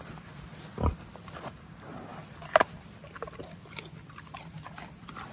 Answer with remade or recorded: recorded